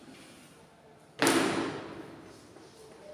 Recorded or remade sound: recorded